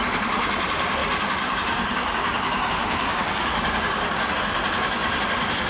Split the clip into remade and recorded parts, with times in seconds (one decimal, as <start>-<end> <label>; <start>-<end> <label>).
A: 0.0-1.0 recorded; 1.0-4.3 remade; 4.3-5.7 recorded